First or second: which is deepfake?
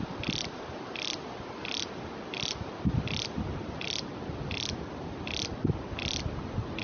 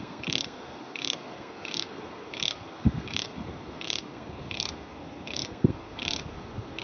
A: second